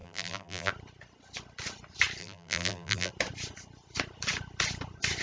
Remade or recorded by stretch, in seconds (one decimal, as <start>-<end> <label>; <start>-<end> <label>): 0.0-0.7 remade; 0.7-2.2 recorded; 2.2-3.1 remade; 3.1-5.2 recorded